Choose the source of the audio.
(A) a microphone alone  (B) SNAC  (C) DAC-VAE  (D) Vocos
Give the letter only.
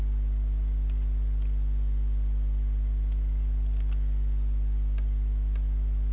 A